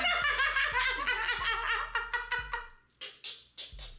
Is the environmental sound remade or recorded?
recorded